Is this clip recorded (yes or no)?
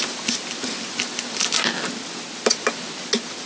yes